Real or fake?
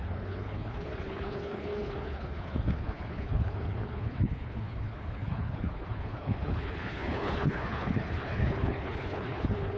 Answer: fake